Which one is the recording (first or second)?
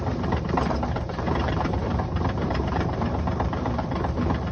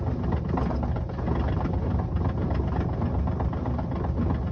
second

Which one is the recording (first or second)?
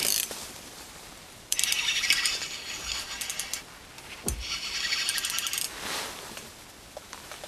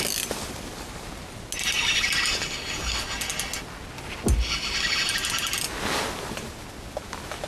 second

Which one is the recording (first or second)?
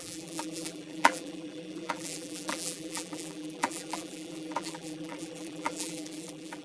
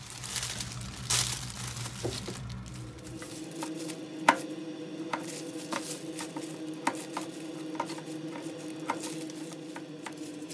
second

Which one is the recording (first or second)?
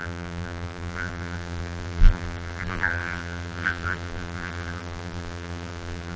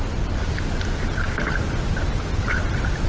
second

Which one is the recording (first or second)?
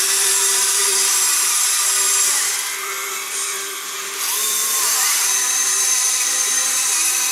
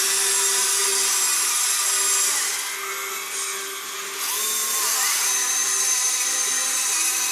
second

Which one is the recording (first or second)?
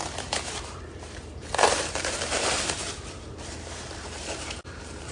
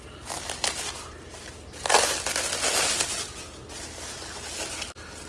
second